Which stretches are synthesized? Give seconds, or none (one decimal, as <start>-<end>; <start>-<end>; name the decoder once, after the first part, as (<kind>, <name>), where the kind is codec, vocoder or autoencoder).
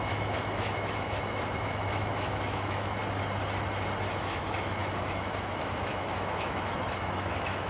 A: 0.0-3.0 (autoencoder, DAC-VAE); 4.1-7.7